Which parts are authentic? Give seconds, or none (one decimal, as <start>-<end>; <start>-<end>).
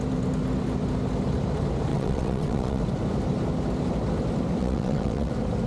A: 0.0-1.9; 2.8-4.6; 5.3-5.7